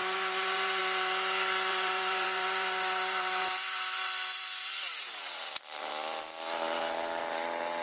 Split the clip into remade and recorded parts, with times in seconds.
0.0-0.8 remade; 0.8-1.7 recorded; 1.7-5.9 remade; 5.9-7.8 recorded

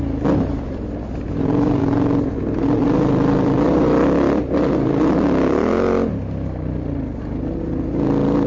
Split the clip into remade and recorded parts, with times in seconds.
0.0-8.5 recorded

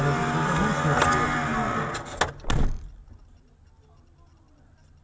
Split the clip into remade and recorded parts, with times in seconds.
0.0-5.0 recorded

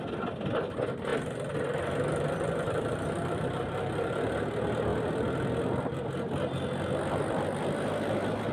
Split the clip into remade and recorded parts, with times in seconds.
0.0-1.1 recorded; 1.1-4.3 remade; 4.3-4.9 recorded; 4.9-6.0 remade; 6.0-8.5 recorded

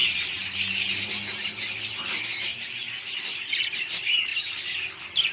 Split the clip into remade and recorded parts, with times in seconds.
0.0-1.1 remade; 1.1-2.5 recorded; 2.5-3.2 remade; 3.2-5.3 recorded

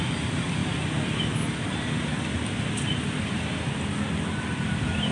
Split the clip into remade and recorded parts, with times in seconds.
0.0-5.1 recorded